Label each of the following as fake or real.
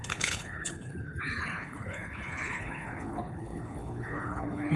fake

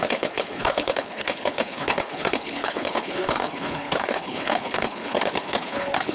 fake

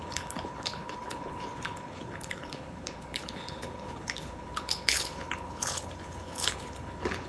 fake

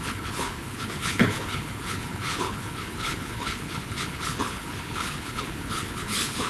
fake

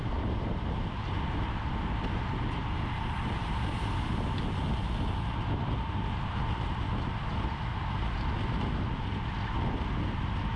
real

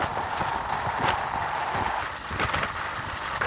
real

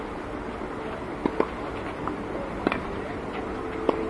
real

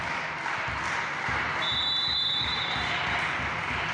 real